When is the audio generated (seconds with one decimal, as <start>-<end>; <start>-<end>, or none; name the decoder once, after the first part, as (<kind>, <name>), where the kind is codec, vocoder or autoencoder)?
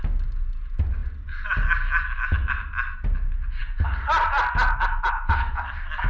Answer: none